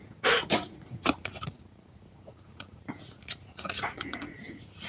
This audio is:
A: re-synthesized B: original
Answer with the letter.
A